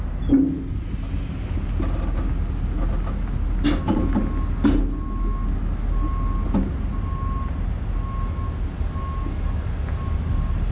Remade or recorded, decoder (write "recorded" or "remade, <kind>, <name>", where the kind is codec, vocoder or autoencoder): recorded